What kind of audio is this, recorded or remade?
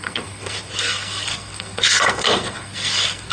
remade